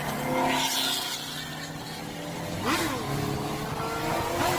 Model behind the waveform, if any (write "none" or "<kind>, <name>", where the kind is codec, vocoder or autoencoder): none